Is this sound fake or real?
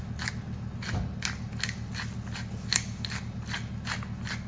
real